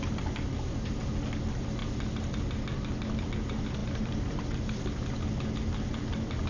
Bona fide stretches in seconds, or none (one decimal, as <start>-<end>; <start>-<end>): 0.0-3.8; 4.4-6.5